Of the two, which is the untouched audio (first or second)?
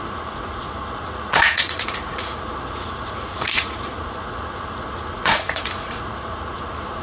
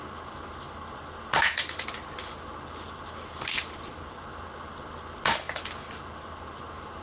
second